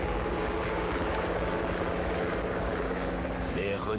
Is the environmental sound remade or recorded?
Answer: remade